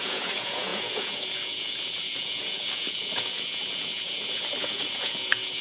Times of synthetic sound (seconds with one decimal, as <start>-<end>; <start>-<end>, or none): 0.0-5.6